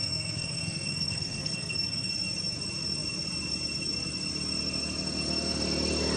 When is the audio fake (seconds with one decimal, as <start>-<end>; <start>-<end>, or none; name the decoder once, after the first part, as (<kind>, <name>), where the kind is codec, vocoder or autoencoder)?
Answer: 0.0-2.1 (codec, SNAC)